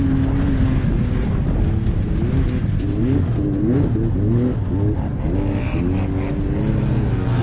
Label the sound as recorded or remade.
recorded